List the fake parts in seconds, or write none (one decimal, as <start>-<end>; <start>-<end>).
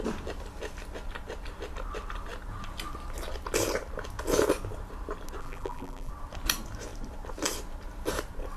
5.4-6.1